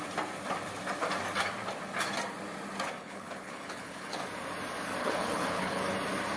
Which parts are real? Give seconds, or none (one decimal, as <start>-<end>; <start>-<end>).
0.0-3.0; 4.1-5.0; 5.8-6.4